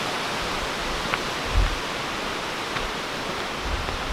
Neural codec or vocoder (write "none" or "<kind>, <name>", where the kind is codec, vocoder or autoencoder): none